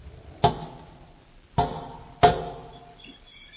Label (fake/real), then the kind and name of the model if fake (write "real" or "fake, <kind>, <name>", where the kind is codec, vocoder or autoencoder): real